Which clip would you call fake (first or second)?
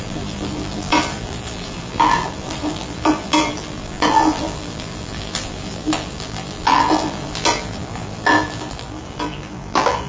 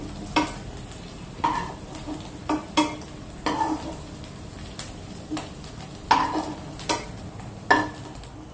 first